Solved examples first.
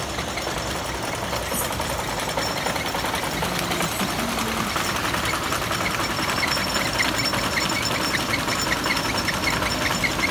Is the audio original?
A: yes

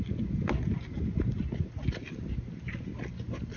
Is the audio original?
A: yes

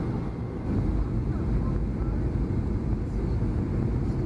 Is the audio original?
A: yes